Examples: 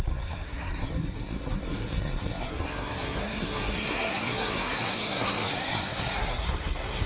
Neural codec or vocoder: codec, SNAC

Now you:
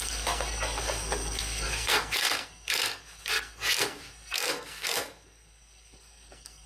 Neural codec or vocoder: codec, SNAC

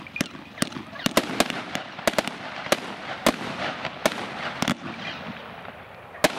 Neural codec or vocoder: none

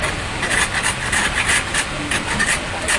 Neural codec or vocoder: none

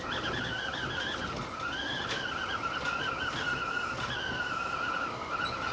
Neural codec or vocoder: none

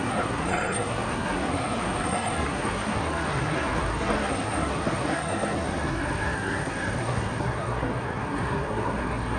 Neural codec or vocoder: codec, SNAC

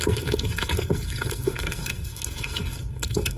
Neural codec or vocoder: codec, SNAC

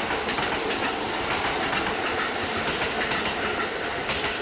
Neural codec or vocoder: none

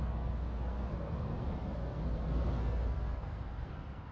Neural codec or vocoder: codec, SNAC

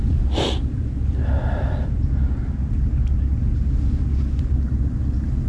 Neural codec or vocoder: none